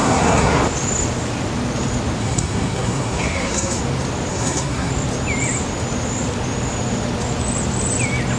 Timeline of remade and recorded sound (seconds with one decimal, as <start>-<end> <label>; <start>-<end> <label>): 0.0-0.6 remade; 0.6-2.2 recorded; 2.2-3.8 remade; 3.8-4.3 recorded; 4.3-4.9 remade; 4.9-8.4 recorded